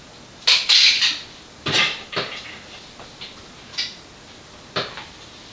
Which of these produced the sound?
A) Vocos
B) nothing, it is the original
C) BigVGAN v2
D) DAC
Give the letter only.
B